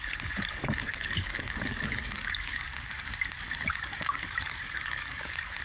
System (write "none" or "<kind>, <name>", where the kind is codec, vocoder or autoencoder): codec, DAC